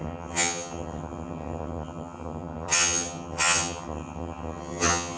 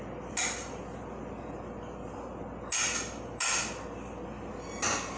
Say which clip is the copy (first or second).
first